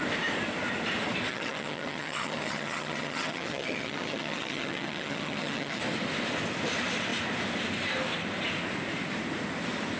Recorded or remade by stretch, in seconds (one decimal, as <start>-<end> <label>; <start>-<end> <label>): 0.0-1.3 recorded; 1.3-5.8 remade; 5.8-10.0 recorded